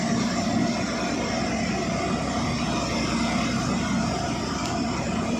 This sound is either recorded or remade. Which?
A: recorded